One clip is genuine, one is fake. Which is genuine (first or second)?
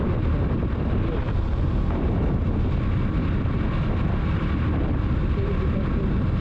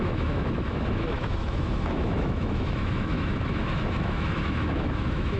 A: first